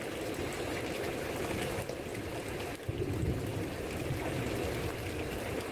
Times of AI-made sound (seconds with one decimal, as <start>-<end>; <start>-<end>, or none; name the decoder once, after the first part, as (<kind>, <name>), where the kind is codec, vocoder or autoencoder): 2.1-2.9 (vocoder, BigVGAN v2)